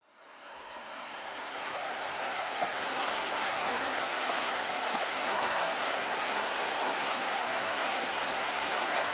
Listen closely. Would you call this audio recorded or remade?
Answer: remade